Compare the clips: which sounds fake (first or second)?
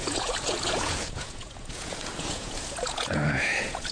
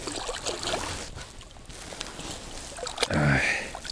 first